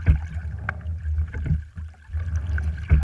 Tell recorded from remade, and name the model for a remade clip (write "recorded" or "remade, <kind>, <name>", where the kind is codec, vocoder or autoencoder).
recorded